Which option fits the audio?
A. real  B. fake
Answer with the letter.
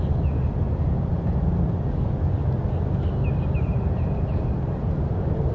A